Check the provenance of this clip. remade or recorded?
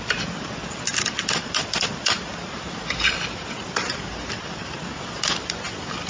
recorded